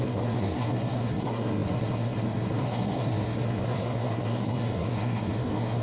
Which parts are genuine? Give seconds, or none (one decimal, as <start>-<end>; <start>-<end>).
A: none